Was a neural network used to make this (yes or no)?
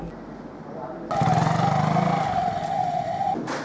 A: no